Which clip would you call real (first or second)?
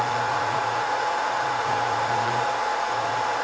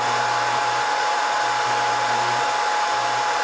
second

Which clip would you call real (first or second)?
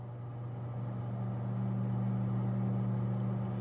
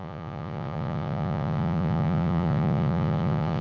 first